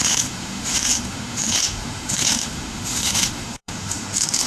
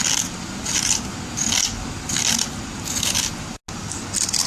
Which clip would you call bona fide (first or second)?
second